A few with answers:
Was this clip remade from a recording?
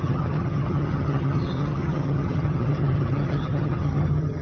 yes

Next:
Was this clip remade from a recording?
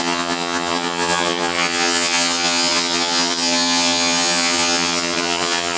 yes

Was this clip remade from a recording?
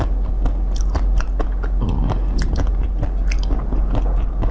no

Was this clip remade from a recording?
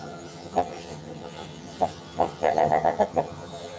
yes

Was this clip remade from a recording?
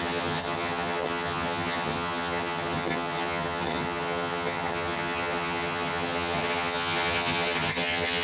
yes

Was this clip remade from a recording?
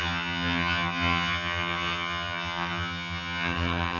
yes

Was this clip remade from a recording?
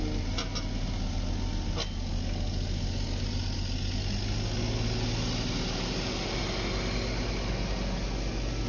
no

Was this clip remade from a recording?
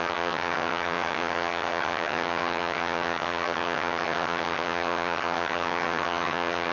yes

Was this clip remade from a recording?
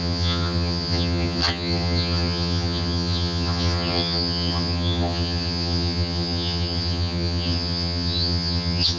yes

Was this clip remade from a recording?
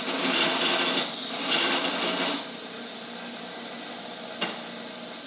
no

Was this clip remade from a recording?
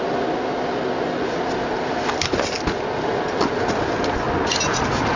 no